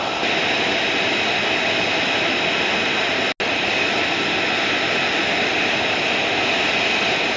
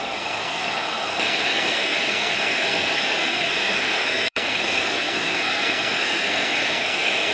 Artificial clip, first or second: second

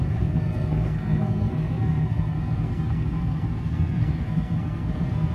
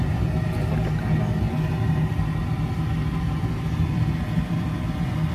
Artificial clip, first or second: first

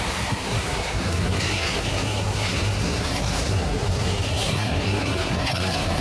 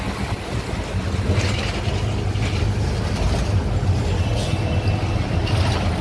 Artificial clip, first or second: first